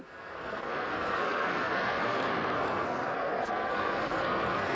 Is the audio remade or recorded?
remade